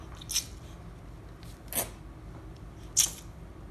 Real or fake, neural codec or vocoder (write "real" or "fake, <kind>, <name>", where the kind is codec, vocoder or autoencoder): real